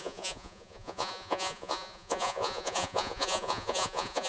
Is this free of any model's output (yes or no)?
no